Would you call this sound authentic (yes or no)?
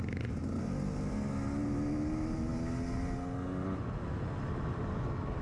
yes